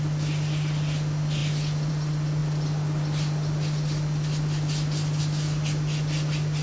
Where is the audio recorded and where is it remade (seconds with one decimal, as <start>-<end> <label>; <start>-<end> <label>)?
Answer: 0.0-6.6 recorded